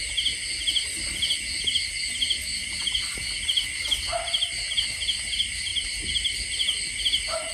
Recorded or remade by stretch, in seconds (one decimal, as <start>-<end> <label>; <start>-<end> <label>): 0.0-4.1 recorded; 4.1-5.0 remade; 5.0-5.7 recorded; 5.7-6.5 remade; 6.5-7.5 recorded